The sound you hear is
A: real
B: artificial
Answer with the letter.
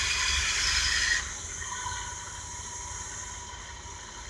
A